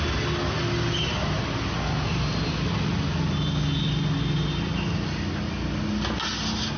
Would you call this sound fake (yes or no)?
no